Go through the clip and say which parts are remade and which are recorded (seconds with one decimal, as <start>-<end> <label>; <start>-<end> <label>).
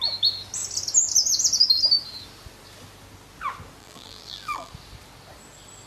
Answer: 0.0-3.8 recorded; 3.8-4.7 remade; 4.7-5.9 recorded